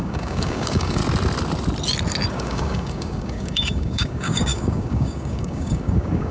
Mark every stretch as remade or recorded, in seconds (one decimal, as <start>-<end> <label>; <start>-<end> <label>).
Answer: 0.0-1.0 remade; 1.0-2.3 recorded; 2.3-6.3 remade